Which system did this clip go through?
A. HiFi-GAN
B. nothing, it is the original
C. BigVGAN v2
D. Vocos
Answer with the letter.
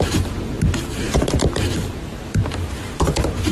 C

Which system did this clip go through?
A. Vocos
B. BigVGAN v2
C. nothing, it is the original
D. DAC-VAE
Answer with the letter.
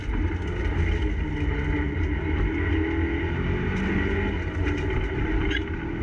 C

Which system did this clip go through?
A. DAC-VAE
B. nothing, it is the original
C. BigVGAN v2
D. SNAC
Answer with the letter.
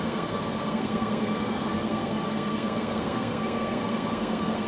D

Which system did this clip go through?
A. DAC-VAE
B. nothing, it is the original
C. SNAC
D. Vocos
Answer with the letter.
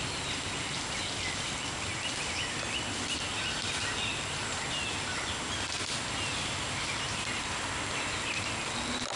B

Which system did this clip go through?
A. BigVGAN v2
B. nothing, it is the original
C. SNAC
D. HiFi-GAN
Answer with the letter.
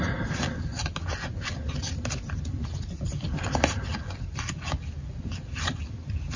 B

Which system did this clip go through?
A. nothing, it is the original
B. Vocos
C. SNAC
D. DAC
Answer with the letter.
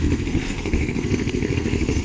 C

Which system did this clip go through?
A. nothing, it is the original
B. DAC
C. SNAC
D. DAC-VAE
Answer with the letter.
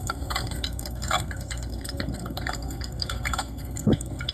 C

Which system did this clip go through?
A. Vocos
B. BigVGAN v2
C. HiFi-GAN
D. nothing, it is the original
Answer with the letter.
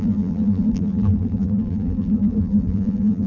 B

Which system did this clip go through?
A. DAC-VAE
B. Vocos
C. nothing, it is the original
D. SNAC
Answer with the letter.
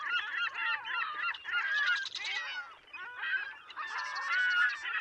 C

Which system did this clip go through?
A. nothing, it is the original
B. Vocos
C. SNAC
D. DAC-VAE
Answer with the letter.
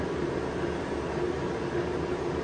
A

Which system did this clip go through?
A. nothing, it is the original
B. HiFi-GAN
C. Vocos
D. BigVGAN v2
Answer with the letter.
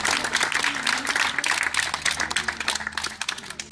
A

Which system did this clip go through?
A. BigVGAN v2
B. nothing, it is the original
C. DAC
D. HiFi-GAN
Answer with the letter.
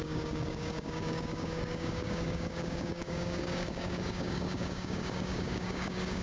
C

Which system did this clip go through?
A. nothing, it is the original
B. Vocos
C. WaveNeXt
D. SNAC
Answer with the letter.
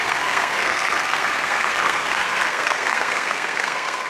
D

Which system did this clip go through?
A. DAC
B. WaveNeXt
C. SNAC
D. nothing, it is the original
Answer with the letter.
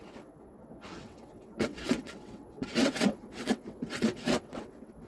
B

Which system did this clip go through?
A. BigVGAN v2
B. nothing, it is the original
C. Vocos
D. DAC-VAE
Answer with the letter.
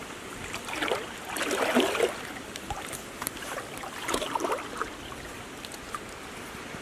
B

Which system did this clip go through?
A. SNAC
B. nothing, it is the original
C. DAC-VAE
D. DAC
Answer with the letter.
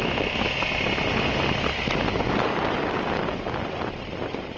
B